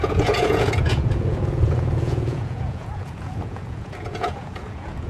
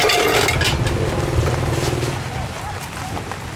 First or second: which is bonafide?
second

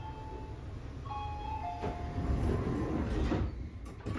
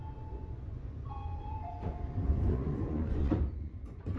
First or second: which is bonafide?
first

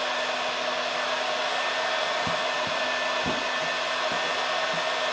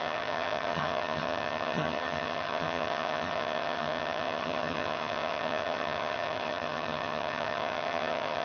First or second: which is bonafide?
first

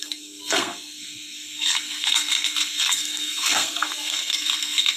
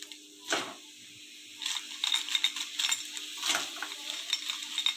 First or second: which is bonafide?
second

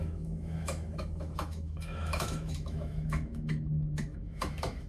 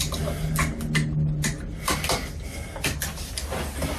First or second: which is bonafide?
second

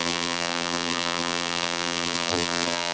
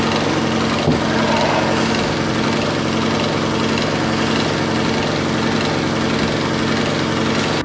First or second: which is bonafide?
second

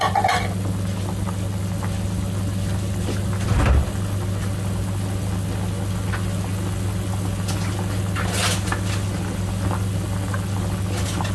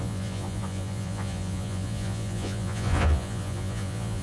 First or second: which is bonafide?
first